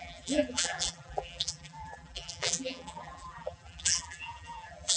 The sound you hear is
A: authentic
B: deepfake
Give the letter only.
B